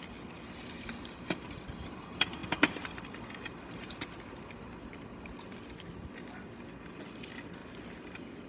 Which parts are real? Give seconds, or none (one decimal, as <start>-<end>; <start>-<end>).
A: 0.0-8.5